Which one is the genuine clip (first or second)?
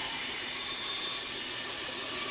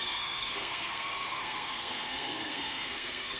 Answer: first